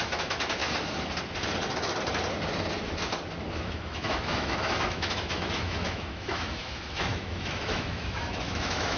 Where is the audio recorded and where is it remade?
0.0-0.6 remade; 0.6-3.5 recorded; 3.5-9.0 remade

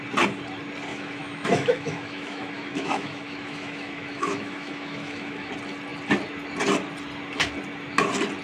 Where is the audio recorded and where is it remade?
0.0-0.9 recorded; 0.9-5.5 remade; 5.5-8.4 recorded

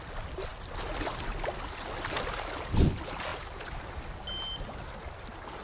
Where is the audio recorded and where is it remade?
0.0-5.6 recorded

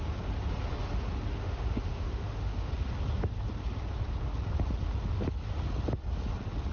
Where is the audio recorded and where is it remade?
0.0-1.3 recorded; 1.3-2.7 remade; 2.7-6.7 recorded